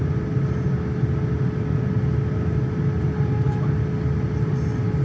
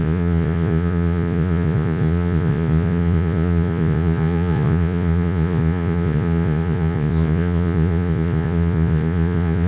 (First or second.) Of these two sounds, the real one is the first